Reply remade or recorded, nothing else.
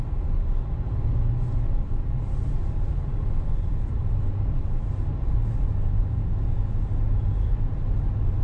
recorded